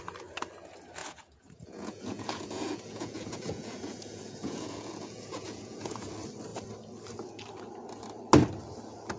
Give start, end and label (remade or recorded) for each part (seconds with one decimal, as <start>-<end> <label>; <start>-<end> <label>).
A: 0.0-1.0 recorded; 1.0-6.1 remade; 6.1-9.2 recorded